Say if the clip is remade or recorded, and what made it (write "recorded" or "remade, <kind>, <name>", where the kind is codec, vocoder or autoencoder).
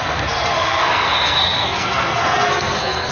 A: remade, codec, SNAC